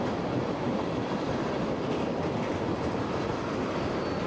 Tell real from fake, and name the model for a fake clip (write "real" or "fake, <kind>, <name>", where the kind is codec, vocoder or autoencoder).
real